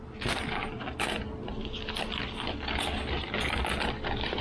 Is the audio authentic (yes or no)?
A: yes